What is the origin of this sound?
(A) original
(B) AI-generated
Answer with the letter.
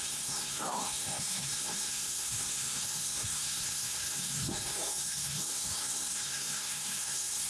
B